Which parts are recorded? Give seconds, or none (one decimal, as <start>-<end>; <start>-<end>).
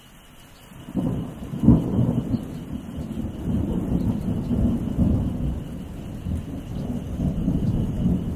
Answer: 0.0-8.4